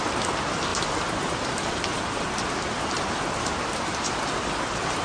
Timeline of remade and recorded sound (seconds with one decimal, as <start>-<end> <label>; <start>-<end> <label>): 0.0-5.0 recorded